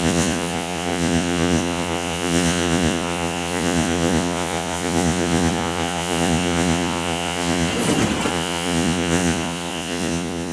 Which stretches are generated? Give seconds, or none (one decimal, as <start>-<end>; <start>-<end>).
0.0-7.7; 8.3-10.5